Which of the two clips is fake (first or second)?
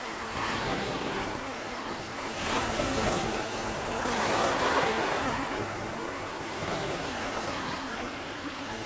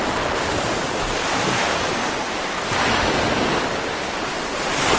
first